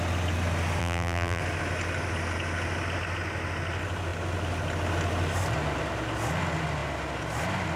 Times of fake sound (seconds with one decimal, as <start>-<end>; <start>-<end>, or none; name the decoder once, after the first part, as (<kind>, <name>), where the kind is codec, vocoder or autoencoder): 0.8-1.4 (vocoder, BigVGAN v2)